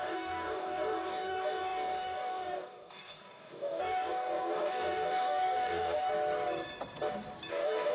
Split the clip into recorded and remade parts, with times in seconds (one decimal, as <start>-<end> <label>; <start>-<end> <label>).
0.0-6.1 remade; 6.1-7.5 recorded; 7.5-7.9 remade